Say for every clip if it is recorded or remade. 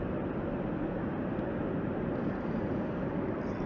recorded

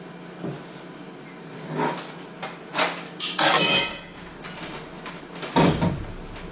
recorded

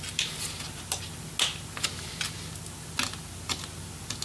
recorded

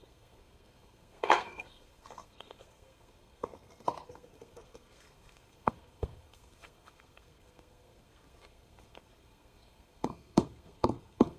remade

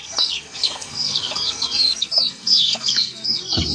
remade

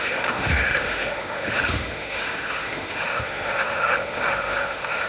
remade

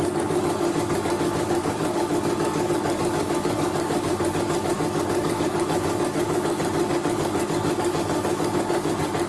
remade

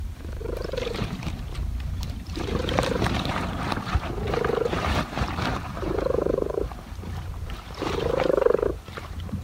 remade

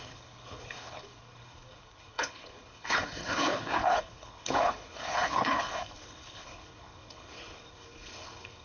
remade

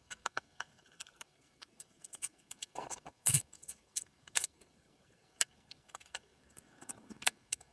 remade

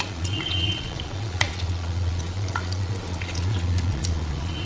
remade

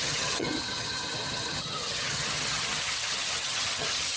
remade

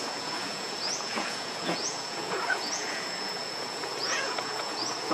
remade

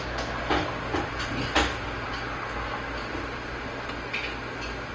recorded